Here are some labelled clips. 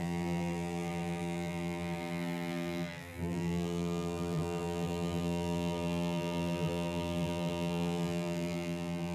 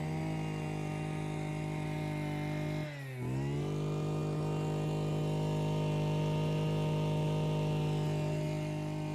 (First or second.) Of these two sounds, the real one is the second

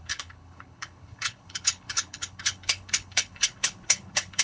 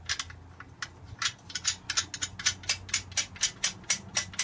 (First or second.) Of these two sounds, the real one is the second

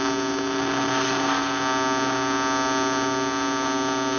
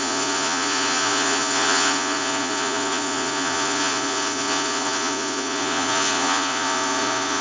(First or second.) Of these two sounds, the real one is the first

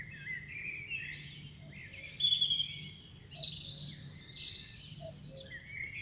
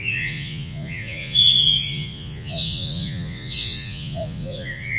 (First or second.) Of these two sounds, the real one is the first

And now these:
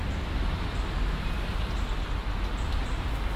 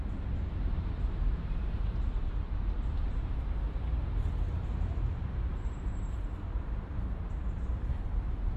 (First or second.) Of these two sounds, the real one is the first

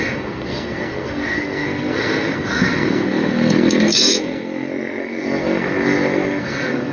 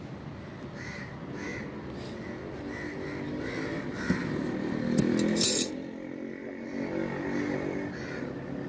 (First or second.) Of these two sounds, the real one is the second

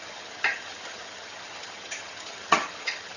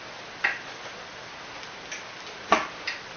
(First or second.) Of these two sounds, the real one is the second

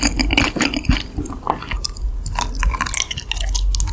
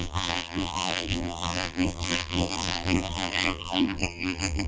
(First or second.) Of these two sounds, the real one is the first